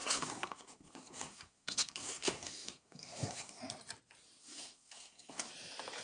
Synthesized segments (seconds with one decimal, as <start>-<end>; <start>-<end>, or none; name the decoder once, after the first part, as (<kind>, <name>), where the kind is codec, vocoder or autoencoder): 0.0-3.6 (codec, SNAC); 4.4-5.5